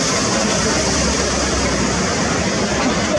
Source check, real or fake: real